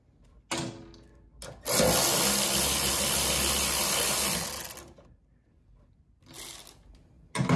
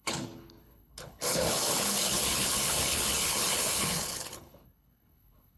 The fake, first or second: second